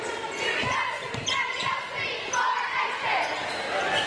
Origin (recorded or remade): recorded